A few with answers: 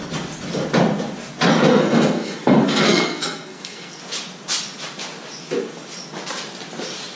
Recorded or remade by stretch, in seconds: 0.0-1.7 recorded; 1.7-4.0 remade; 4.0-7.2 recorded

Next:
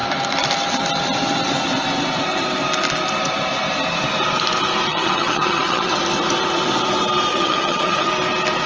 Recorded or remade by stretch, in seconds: 0.0-4.9 recorded; 4.9-6.0 remade; 6.0-7.3 recorded; 7.3-8.1 remade; 8.1-8.7 recorded

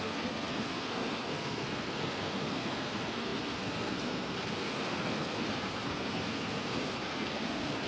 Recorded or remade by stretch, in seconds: 0.0-7.9 remade

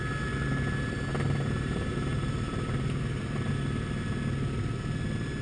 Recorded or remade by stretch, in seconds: 0.0-1.1 recorded; 1.1-3.5 remade; 3.5-5.4 recorded

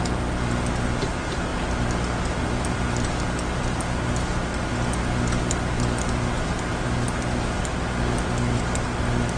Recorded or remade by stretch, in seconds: 0.0-9.4 recorded

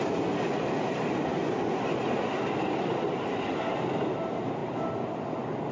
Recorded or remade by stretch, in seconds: 0.0-5.7 recorded

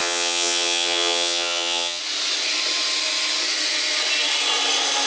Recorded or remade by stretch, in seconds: 0.0-2.0 remade; 2.0-5.1 recorded